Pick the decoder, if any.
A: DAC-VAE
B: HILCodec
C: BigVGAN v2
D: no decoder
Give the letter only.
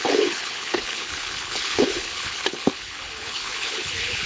B